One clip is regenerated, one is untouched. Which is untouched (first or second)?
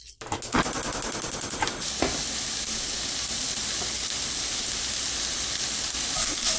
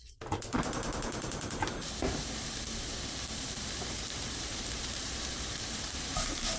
first